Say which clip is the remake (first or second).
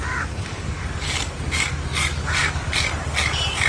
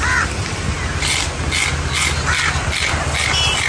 first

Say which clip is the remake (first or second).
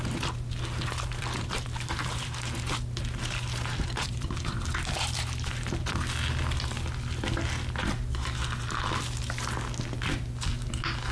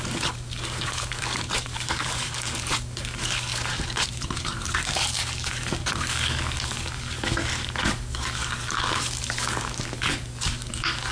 second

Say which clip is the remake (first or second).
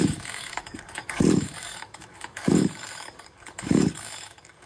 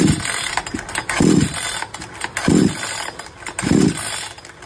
first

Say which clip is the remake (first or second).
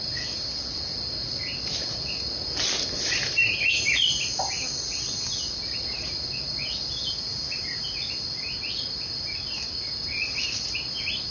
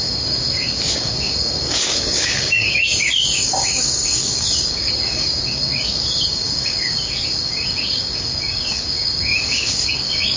second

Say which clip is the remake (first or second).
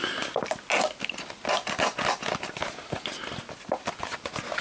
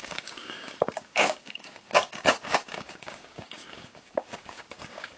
second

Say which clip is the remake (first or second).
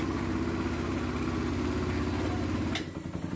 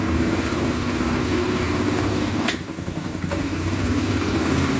second